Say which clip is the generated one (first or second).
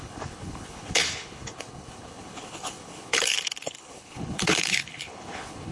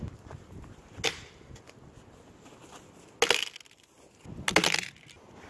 first